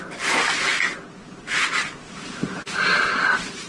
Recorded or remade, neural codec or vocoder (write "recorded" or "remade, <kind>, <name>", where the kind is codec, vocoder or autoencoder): recorded